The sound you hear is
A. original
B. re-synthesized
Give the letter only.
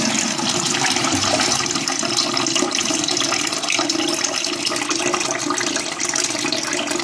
A